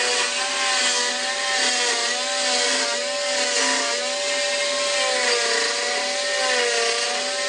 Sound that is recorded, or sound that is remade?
recorded